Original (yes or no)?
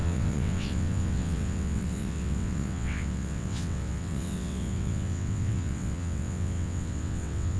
no